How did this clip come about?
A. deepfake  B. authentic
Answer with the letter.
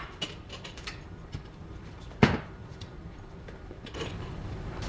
A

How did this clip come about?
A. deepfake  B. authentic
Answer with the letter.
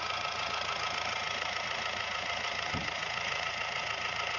A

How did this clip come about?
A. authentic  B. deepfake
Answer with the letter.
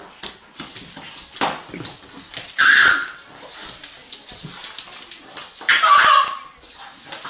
A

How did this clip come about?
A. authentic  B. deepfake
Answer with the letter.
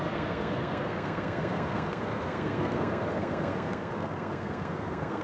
B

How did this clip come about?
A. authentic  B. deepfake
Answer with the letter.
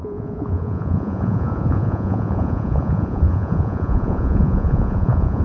B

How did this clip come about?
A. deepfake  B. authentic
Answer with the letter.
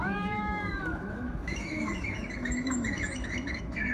A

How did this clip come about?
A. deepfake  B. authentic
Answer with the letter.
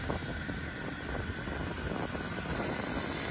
B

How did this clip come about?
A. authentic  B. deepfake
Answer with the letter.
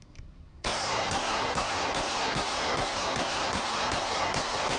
B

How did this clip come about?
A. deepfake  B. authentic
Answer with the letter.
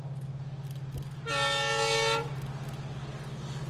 B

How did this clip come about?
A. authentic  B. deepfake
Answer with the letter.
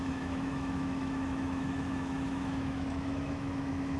B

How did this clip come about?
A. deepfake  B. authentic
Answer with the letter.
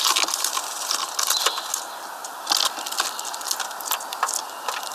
B